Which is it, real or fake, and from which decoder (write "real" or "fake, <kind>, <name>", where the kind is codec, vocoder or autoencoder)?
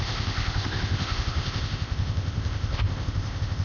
fake, codec, ZipCodec